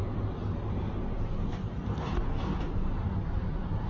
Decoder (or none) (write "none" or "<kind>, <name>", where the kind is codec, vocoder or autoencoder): vocoder, BigVGAN v2